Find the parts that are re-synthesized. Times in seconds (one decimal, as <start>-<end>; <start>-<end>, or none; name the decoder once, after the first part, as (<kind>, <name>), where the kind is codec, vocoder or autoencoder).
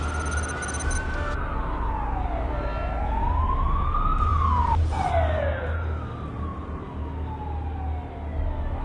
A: none